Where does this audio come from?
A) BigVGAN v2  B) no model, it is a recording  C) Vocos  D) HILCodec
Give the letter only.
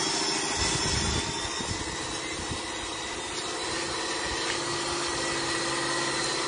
B